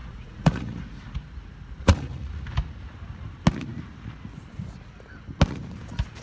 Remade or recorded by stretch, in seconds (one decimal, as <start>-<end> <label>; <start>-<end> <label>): 0.0-0.8 remade; 0.8-1.8 recorded; 1.8-2.4 remade; 2.4-6.2 recorded